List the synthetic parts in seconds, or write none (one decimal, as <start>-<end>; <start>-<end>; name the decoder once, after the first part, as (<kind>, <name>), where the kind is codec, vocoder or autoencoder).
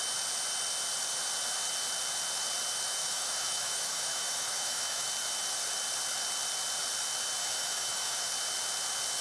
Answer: 3.0-5.0 (autoencoder, DAC-VAE); 7.4-8.3